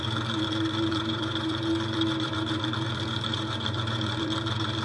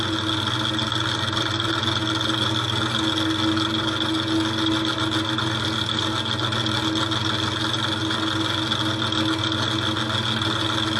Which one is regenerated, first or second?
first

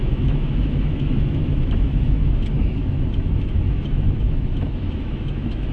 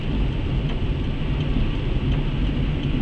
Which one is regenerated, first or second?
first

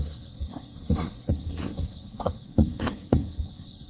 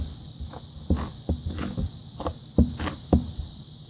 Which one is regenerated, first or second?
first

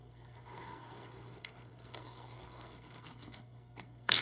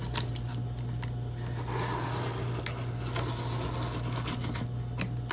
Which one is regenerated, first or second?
first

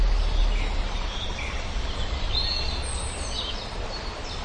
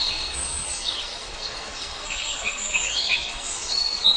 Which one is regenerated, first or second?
second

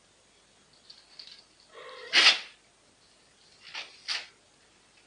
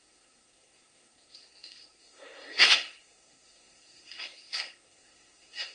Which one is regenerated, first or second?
second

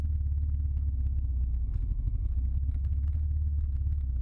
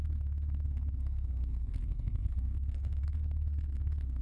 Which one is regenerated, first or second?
second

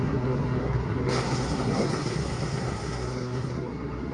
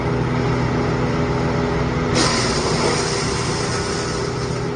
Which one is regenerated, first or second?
first